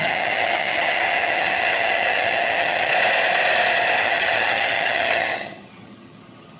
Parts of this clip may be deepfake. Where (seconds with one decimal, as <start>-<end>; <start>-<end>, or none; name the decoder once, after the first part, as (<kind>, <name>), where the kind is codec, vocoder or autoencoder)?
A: 0.0-2.9 (vocoder, HiFi-GAN); 4.0-6.6